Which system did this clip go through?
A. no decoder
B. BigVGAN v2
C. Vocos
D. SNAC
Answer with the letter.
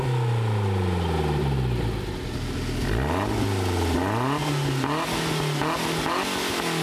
A